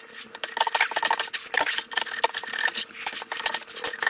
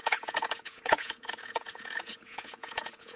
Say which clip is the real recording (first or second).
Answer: first